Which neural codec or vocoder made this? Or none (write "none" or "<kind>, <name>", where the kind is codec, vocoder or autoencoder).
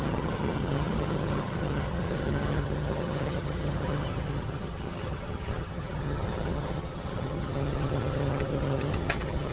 vocoder, HiFi-GAN